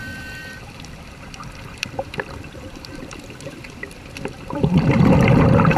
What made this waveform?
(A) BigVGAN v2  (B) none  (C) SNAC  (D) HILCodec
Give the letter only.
A